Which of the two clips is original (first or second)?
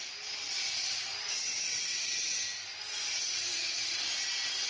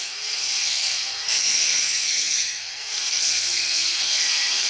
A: first